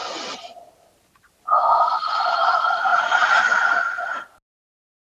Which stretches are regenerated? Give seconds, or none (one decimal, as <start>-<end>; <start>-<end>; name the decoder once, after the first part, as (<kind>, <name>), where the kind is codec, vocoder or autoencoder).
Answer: none